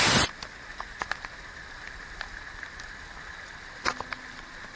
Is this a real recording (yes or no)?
yes